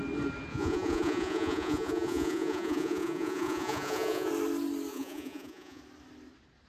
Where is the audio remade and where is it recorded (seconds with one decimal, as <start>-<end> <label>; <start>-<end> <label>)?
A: 0.0-0.5 recorded; 0.5-4.3 remade; 4.3-4.9 recorded; 4.9-5.8 remade; 5.8-6.7 recorded